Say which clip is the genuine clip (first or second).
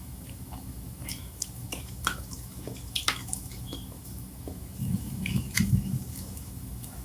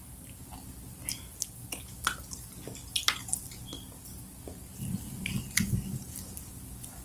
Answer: second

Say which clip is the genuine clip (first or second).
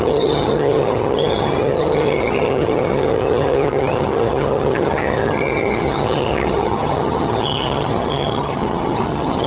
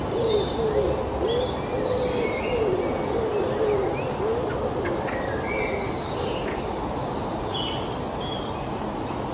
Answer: second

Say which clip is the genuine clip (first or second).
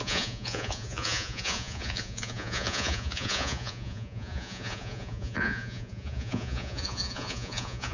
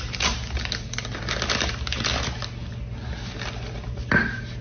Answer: second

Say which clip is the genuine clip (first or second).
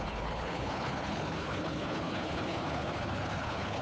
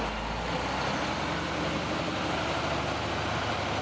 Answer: second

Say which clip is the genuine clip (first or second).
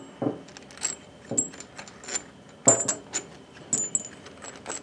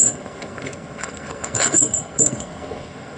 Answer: first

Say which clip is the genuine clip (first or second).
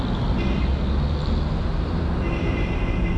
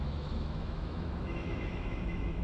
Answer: first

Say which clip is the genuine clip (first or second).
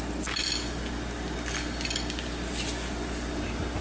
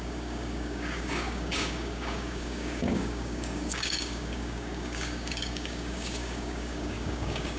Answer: first